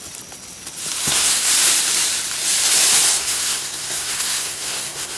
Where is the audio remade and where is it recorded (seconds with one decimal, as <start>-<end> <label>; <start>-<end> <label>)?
0.0-1.0 recorded; 1.0-1.5 remade; 1.5-3.1 recorded; 3.1-5.2 remade